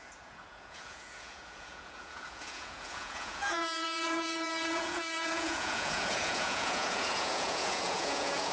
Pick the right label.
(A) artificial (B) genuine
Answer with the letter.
A